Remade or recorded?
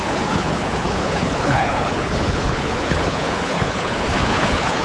remade